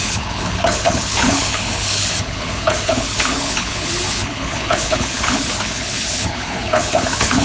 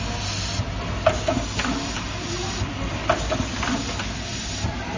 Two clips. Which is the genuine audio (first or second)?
second